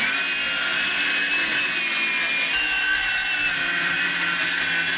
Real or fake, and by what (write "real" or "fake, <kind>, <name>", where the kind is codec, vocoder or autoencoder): real